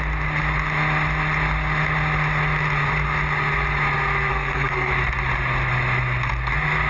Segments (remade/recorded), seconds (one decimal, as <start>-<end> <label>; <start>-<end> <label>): 0.0-4.3 recorded; 4.3-4.9 remade; 4.9-6.9 recorded